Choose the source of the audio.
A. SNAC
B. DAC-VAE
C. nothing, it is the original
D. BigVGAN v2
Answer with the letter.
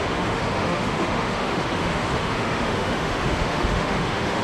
B